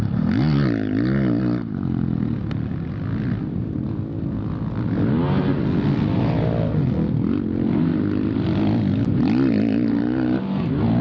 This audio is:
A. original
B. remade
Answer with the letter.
A